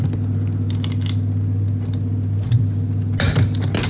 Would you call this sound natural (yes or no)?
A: yes